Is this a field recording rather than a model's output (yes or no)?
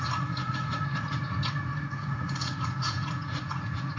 no